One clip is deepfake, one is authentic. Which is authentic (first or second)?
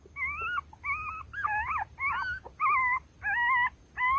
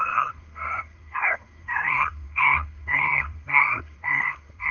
first